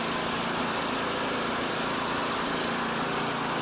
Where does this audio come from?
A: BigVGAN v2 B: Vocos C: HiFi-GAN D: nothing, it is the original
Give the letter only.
D